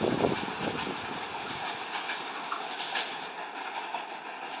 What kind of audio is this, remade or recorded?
recorded